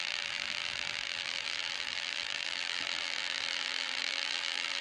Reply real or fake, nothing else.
fake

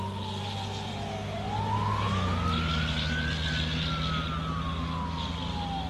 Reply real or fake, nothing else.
real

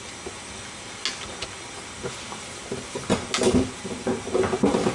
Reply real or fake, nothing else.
real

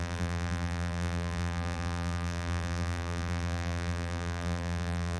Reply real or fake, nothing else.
fake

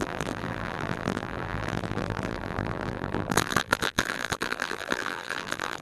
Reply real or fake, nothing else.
fake